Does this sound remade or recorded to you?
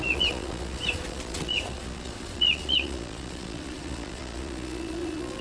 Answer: remade